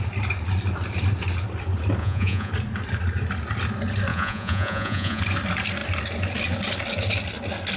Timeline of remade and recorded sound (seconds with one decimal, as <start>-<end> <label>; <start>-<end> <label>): 0.0-2.0 recorded; 2.0-2.5 remade; 2.5-4.1 recorded; 4.1-5.2 remade; 5.2-7.8 recorded